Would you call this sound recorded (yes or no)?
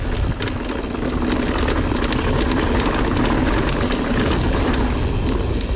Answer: yes